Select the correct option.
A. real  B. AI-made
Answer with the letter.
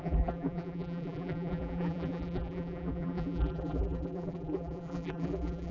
B